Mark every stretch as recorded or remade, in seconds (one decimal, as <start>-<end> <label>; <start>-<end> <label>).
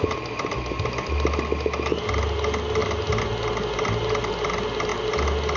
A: 0.0-5.6 recorded